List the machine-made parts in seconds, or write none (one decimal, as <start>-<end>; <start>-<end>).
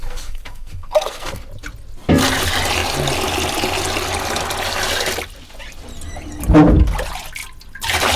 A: 0.0-1.5